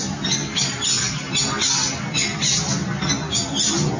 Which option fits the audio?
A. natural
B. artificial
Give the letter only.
A